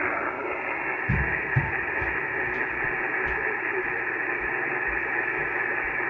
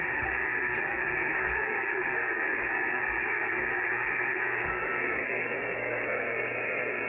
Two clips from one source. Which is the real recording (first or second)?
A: first